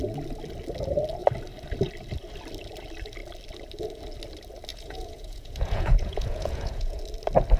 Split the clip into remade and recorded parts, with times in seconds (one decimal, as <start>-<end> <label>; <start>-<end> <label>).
0.0-4.7 recorded; 4.7-7.0 remade; 7.0-7.6 recorded